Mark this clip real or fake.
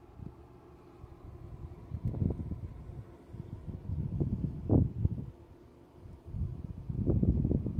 real